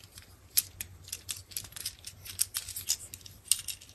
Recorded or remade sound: recorded